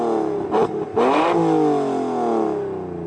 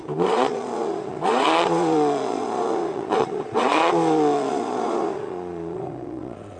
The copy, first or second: second